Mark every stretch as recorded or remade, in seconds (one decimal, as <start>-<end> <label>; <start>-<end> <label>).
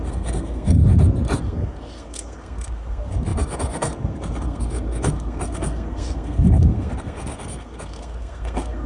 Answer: 0.0-0.8 remade; 0.8-1.4 recorded; 1.4-8.9 remade